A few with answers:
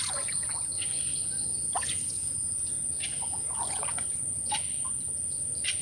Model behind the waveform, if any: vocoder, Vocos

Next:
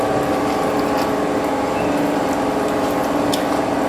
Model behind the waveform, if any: none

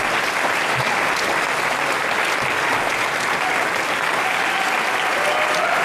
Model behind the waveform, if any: none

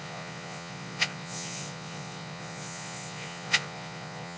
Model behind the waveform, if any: vocoder, Vocos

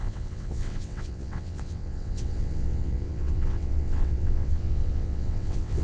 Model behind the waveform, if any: vocoder, WaveNeXt